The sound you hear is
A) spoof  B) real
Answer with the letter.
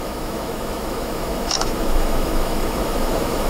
A